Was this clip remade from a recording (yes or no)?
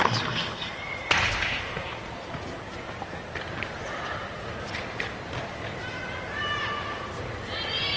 no